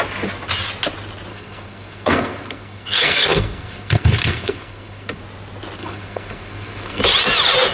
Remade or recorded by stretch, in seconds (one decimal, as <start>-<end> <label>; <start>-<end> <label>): 0.0-1.3 recorded; 1.3-5.2 remade; 5.2-5.8 recorded; 5.8-7.0 remade; 7.0-7.7 recorded